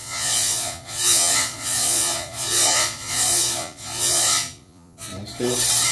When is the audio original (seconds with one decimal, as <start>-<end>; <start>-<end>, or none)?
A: 5.1-5.9